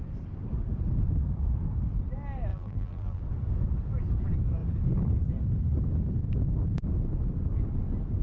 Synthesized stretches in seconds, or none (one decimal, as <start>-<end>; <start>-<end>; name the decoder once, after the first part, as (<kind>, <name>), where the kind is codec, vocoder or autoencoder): 2.5-3.2 (vocoder, BigVGAN v2)